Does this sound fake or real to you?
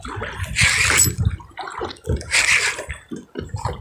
real